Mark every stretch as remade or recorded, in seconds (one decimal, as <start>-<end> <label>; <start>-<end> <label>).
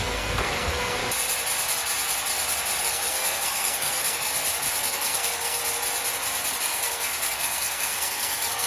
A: 0.0-1.0 remade; 1.0-2.8 recorded; 2.8-4.3 remade; 4.3-4.8 recorded; 4.8-5.6 remade; 5.6-6.6 recorded; 6.6-8.7 remade